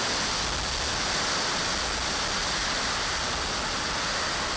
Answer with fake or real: real